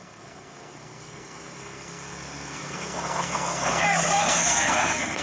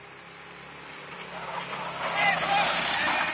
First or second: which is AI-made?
first